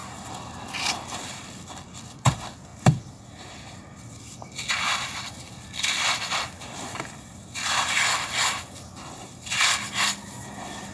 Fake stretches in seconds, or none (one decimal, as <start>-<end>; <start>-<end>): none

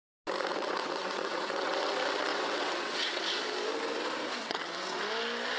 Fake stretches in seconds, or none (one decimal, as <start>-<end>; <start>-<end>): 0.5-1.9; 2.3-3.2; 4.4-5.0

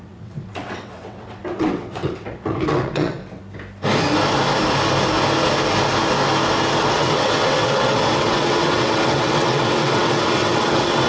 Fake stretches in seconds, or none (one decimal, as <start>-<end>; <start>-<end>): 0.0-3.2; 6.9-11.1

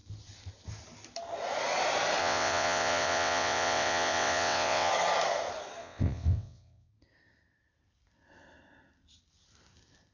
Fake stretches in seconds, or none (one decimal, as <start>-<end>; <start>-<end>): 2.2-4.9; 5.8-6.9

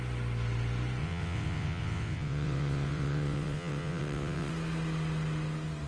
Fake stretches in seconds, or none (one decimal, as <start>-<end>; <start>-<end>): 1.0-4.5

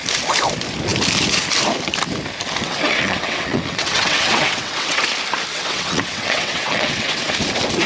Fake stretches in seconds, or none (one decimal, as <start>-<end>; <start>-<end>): 2.6-5.0; 5.5-7.3

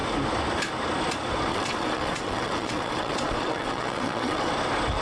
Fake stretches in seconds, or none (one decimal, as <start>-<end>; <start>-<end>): 1.5-4.5